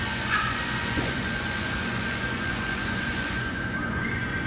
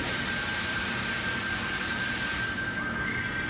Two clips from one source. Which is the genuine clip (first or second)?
second